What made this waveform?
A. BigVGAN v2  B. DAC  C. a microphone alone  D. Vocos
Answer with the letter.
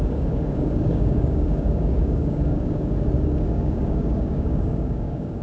B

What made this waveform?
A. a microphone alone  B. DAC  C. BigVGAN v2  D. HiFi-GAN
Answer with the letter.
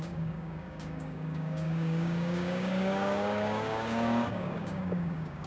B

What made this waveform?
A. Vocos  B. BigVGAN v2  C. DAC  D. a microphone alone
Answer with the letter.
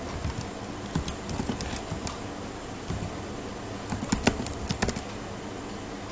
D